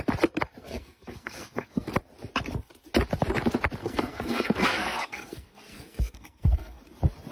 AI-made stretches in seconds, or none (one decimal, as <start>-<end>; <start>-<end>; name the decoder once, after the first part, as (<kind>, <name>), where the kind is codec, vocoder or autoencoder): 0.6-1.9 (codec, SNAC); 3.8-6.8